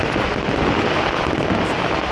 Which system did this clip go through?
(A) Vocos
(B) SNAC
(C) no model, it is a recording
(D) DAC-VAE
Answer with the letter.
C